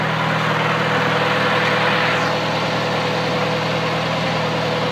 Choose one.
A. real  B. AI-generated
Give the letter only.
A